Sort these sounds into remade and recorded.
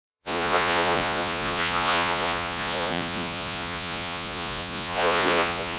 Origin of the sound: remade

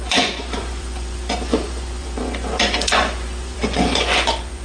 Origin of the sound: remade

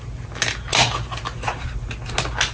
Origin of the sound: recorded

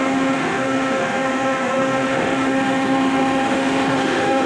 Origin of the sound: remade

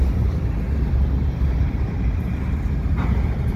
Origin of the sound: recorded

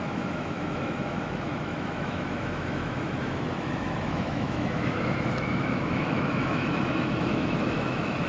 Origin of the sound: remade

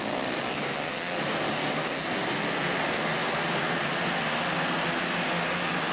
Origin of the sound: recorded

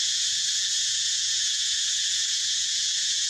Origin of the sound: remade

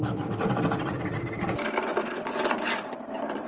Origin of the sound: remade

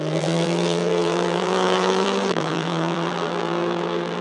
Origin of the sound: remade